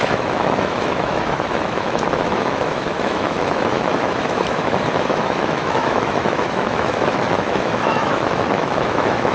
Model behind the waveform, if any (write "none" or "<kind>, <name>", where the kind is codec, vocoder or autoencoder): autoencoder, DAC-VAE